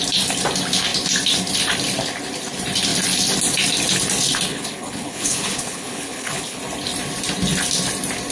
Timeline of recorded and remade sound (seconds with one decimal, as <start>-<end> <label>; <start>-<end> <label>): 0.0-4.5 recorded; 4.5-6.6 remade; 6.6-8.3 recorded